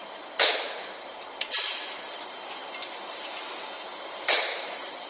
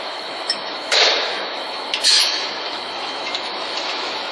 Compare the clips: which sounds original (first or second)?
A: first